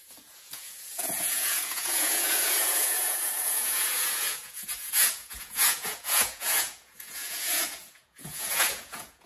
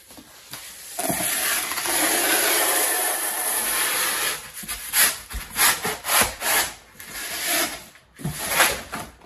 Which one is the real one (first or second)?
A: second